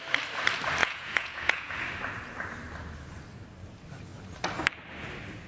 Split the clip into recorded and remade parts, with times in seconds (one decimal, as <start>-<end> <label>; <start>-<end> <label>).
0.0-0.8 recorded; 0.8-1.7 remade; 1.7-5.5 recorded